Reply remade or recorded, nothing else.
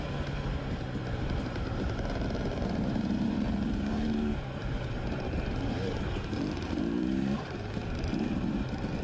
remade